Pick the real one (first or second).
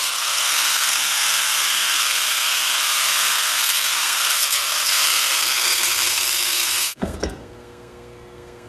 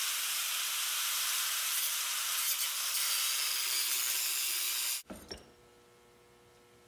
second